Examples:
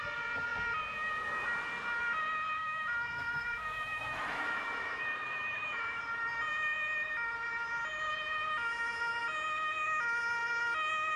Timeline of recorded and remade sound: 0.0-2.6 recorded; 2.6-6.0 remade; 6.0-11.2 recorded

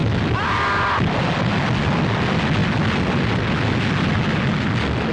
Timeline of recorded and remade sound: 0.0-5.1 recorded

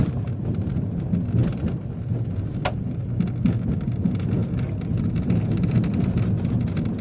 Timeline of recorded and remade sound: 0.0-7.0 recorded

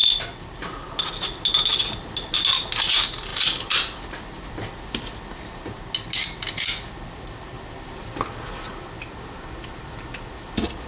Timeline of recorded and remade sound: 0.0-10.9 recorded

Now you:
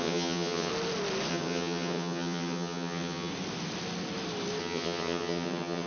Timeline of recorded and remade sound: 0.0-0.7 remade; 0.7-1.3 recorded; 1.3-3.3 remade; 3.3-4.6 recorded; 4.6-5.9 remade

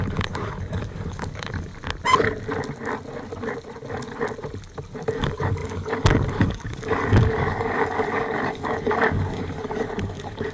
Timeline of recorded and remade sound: 0.0-1.7 remade; 1.7-5.1 recorded; 5.1-10.5 remade

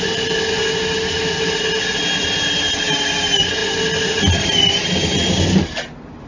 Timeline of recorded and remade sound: 0.0-6.3 recorded